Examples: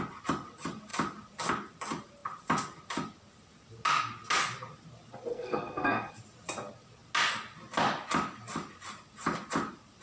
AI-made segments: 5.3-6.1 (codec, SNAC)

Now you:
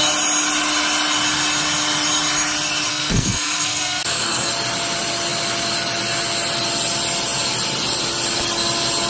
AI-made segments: 2.9-4.5 (codec, SNAC)